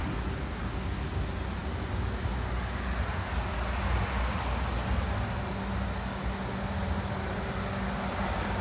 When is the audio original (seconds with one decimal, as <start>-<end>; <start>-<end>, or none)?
0.0-8.6